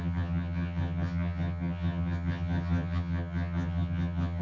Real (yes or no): no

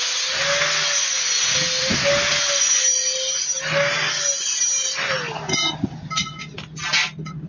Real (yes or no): yes